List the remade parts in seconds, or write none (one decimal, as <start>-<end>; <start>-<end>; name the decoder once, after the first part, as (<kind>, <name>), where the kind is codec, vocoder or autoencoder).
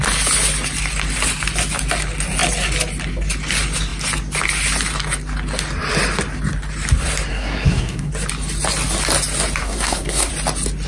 7.3-8.1 (codec, SNAC); 9.6-10.3